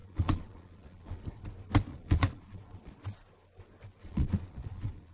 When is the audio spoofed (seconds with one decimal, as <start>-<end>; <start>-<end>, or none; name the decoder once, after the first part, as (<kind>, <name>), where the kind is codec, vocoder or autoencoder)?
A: 0.0-1.4 (vocoder, Vocos); 1.9-2.9; 4.0-5.1